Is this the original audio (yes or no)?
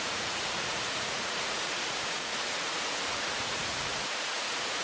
no